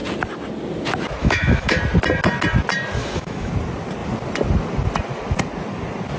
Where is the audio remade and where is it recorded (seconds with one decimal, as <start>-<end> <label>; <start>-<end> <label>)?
0.0-1.2 recorded; 1.2-1.8 remade; 1.8-3.0 recorded; 3.0-3.5 remade; 3.5-6.2 recorded